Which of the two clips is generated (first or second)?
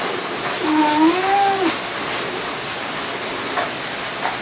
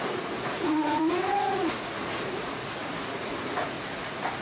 second